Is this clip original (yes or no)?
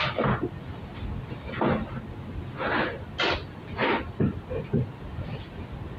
yes